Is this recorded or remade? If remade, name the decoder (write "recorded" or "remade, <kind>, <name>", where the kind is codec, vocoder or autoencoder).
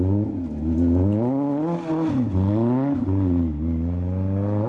recorded